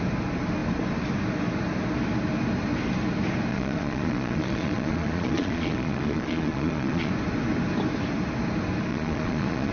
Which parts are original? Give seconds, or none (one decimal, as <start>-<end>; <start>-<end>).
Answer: 0.0-3.5; 7.1-8.9